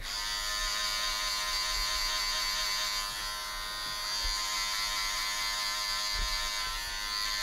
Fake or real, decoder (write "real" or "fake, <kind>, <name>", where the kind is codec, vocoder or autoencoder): real